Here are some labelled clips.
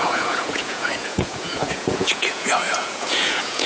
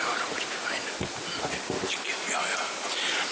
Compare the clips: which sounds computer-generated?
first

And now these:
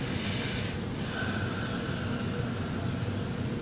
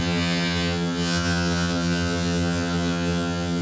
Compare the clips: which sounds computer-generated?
second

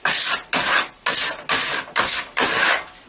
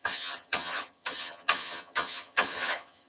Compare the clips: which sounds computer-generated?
second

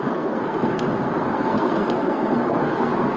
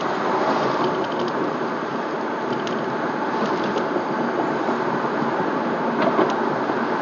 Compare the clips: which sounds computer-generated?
first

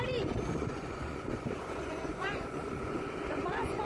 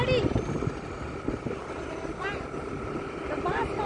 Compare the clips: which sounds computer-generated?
first